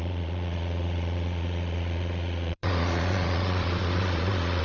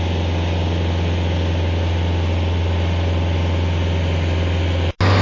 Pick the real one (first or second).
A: second